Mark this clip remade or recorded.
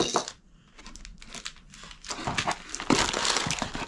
recorded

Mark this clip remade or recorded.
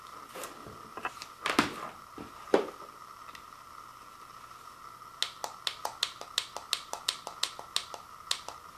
recorded